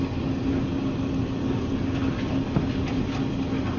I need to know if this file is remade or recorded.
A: recorded